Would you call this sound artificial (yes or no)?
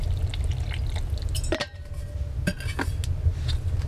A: no